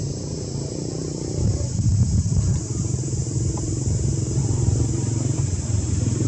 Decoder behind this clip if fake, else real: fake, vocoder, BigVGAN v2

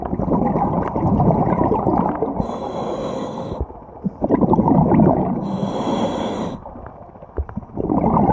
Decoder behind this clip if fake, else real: real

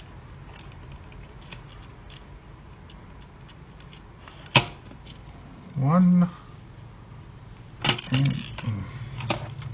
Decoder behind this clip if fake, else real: real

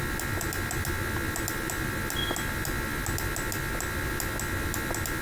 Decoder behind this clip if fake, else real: real